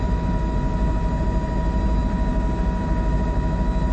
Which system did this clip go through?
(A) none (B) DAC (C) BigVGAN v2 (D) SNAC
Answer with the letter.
A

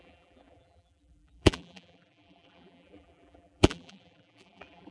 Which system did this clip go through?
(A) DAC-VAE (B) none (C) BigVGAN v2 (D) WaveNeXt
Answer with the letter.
C